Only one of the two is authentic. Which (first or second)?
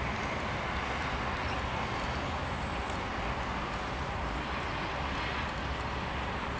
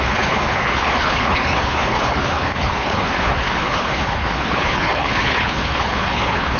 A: first